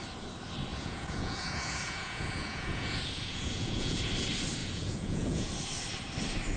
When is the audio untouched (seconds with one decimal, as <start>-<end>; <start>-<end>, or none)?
0.0-0.7; 4.1-4.6; 5.5-6.6

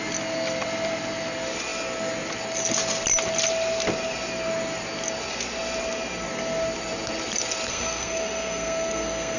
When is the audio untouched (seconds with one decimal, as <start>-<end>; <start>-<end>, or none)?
0.0-7.7

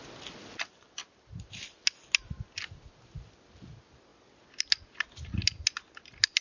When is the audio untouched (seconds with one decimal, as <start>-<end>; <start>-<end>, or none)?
0.0-6.4

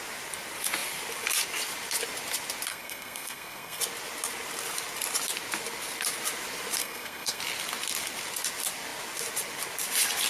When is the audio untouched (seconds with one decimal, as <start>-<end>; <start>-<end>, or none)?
0.0-2.7; 3.8-6.8; 7.4-10.3

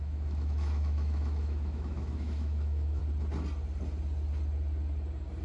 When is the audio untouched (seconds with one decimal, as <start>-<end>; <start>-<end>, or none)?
3.0-5.4

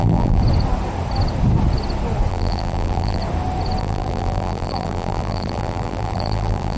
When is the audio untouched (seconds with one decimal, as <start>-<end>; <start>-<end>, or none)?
0.4-2.3; 3.2-3.8